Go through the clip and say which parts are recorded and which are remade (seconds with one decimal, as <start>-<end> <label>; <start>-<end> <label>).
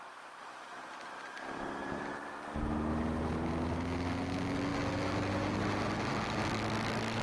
0.0-7.2 recorded